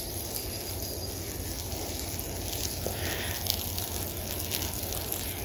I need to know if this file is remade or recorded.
recorded